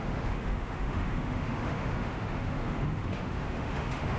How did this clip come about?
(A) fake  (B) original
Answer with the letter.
A